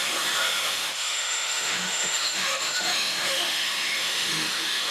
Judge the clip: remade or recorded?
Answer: remade